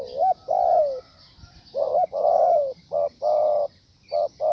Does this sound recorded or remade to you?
recorded